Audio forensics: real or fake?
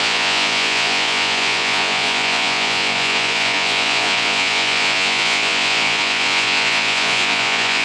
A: fake